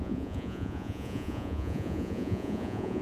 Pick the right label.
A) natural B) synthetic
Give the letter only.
B